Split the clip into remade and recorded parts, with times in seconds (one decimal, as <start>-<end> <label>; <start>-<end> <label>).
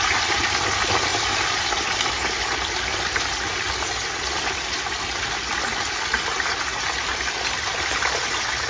0.0-8.7 recorded